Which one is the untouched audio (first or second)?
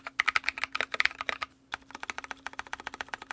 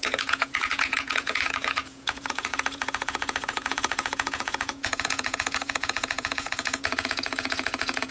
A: first